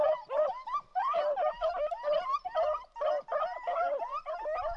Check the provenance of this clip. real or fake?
real